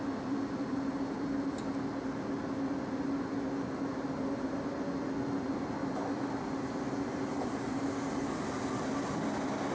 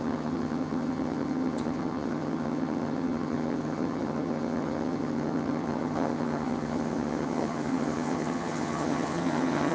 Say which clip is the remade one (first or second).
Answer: second